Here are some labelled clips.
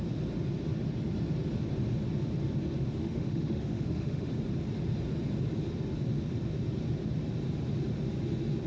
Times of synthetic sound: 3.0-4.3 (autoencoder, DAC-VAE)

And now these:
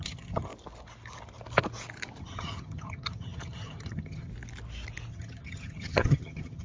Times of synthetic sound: 0.0-0.5 (vocoder, HiFi-GAN); 2.2-4.3; 5.1-6.6

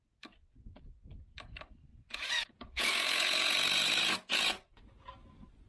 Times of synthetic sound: 1.9-4.8 (vocoder, Vocos)

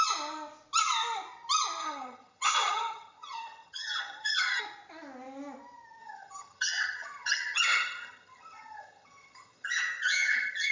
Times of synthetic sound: 1.8-4.6 (vocoder, HiFi-GAN); 6.0-10.7

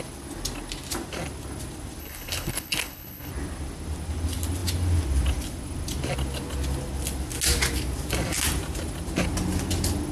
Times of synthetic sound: 2.0-3.3 (codec, HILCodec)

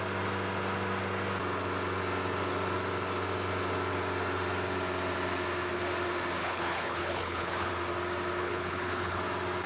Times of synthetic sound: 6.4-7.7 (codec, HILCodec); 8.4-9.2

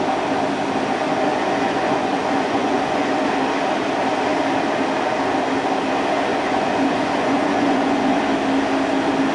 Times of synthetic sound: 1.3-3.1 (vocoder, Vocos); 6.3-8.2

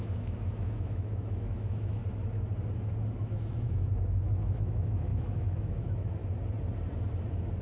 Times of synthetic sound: 0.0-2.0 (autoencoder, DAC-VAE); 3.2-6.2